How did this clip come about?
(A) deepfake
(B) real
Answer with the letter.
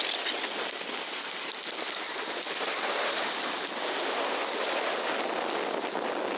B